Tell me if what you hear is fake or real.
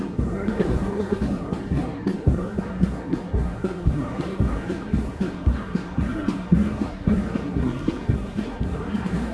fake